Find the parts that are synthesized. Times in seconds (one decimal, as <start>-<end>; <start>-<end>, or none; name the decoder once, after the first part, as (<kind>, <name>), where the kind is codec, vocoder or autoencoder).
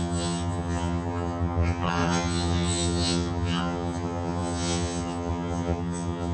0.0-6.3 (vocoder, HiFi-GAN)